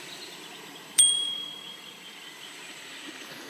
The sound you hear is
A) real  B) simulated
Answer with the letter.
B